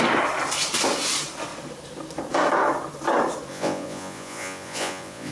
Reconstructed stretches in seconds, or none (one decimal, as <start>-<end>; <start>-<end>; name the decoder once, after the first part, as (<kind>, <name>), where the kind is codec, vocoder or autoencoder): 3.5-5.3 (vocoder, Vocos)